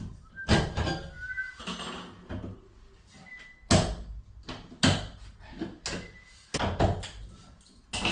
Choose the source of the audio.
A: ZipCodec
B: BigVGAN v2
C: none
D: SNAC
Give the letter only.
C